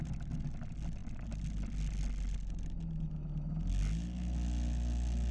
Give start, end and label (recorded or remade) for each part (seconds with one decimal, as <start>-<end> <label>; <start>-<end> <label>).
0.0-5.3 recorded